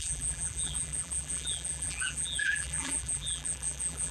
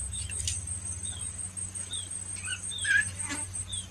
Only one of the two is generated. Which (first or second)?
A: first